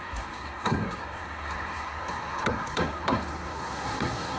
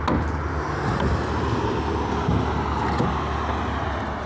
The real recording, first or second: second